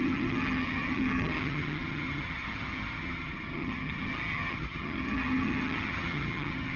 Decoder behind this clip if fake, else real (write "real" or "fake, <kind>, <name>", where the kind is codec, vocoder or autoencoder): fake, vocoder, HiFi-GAN